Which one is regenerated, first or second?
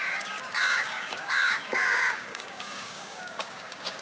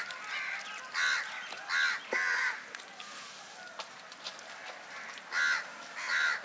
first